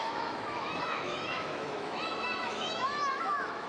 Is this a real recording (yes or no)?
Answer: no